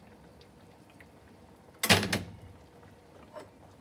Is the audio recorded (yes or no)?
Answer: yes